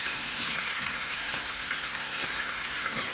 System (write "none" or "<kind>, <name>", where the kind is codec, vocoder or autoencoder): codec, SNAC